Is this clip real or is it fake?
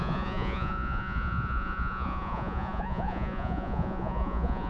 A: fake